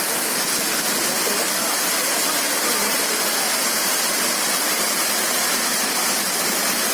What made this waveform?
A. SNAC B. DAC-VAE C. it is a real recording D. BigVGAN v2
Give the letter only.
C